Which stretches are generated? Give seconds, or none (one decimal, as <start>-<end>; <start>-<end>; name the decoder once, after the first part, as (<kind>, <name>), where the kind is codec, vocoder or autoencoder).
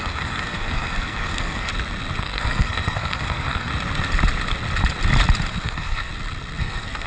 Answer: 0.0-1.7 (codec, SNAC); 2.2-3.7; 5.5-6.1; 6.6-7.1